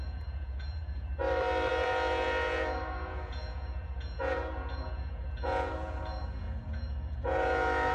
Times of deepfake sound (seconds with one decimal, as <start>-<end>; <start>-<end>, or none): 0.0-1.1; 1.7-7.9